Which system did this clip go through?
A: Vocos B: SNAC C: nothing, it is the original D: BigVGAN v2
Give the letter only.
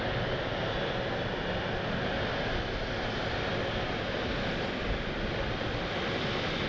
C